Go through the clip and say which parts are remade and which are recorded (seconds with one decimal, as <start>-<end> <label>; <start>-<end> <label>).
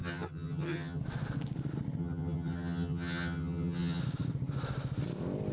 0.0-1.0 remade; 1.0-2.0 recorded; 2.0-4.0 remade; 4.0-5.5 recorded